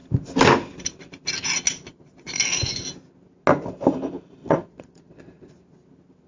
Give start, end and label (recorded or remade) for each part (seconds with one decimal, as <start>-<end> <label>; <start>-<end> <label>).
0.0-1.9 recorded; 1.9-2.4 remade; 2.4-4.4 recorded; 4.4-5.5 remade; 5.5-6.3 recorded